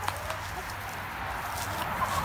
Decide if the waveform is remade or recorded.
recorded